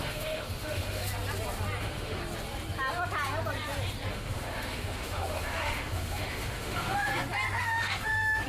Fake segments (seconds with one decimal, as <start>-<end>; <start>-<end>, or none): 0.0-1.0; 1.8-2.2; 4.1-7.1; 7.6-8.5